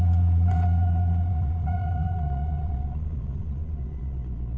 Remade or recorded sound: remade